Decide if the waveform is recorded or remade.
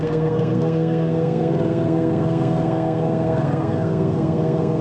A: remade